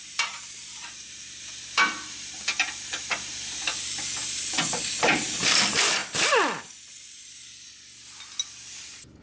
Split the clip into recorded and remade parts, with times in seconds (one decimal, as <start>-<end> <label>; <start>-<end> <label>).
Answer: 0.0-6.0 remade; 6.0-8.7 recorded; 8.7-9.2 remade